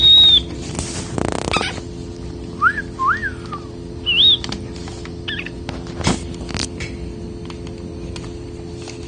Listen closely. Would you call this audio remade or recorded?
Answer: recorded